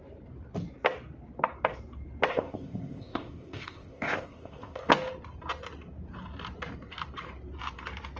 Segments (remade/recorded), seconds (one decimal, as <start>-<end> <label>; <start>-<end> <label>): 0.0-2.3 recorded; 2.3-4.9 remade; 4.9-8.2 recorded